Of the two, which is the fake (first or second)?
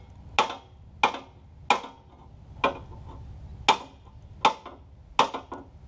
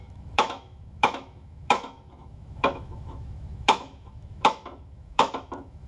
second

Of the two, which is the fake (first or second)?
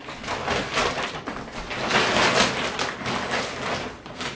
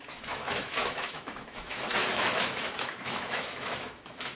second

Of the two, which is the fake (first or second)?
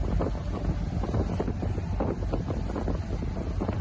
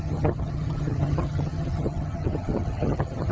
second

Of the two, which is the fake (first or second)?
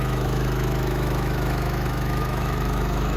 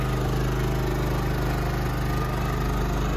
first